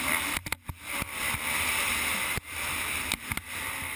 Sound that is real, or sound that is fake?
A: real